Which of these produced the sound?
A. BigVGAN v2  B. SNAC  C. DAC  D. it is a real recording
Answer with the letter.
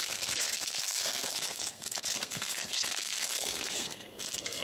B